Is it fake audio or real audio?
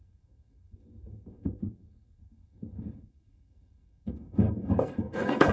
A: fake